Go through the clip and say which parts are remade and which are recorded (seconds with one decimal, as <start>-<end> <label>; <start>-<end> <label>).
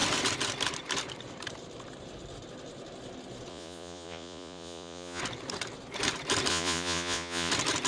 0.0-3.5 recorded; 3.5-5.2 remade; 5.2-6.5 recorded; 6.5-7.5 remade; 7.5-7.9 recorded